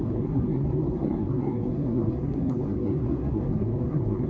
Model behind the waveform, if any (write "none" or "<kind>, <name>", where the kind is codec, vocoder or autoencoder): codec, SNAC